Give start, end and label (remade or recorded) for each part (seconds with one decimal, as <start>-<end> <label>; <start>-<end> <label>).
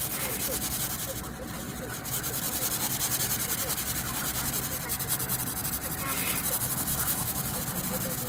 0.0-6.9 recorded; 6.9-7.6 remade; 7.6-8.3 recorded